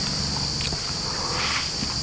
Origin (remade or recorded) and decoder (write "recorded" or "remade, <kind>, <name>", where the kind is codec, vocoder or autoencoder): recorded